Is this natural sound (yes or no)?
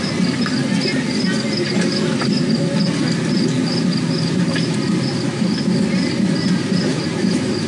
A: yes